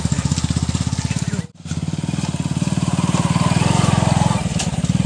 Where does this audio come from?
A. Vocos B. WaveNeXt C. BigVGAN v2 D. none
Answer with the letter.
D